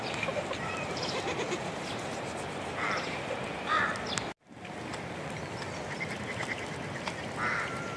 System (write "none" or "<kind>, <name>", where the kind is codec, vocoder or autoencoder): none